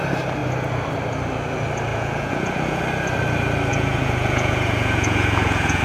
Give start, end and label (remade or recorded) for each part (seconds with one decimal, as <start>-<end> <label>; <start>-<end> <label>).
0.0-1.9 recorded; 1.9-2.8 remade; 2.8-3.7 recorded; 3.7-5.8 remade